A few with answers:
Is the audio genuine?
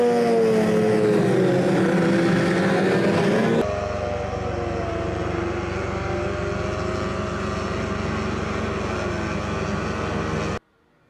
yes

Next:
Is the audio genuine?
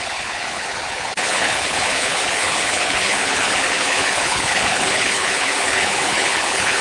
no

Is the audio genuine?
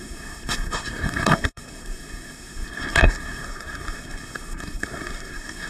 no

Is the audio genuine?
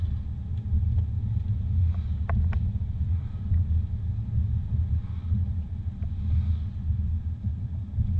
yes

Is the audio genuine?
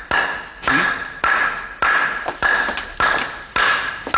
yes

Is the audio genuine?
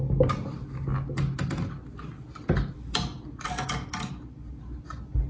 yes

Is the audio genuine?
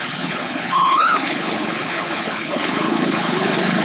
no